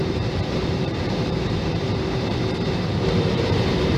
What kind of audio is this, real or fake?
fake